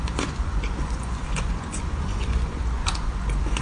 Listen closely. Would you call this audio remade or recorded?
remade